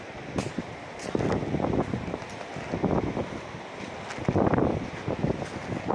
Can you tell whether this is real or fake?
real